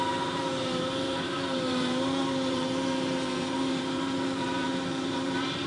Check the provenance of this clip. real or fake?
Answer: fake